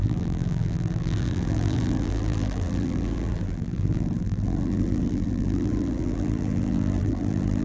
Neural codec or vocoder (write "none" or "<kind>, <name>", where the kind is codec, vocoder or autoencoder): vocoder, BigVGAN v2